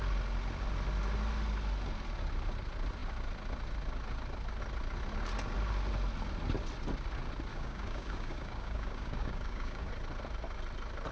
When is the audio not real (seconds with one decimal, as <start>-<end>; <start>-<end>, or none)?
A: 7.5-9.9